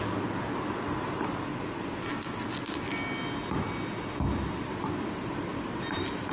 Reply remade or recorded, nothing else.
recorded